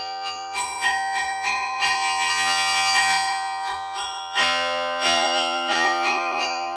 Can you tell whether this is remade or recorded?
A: remade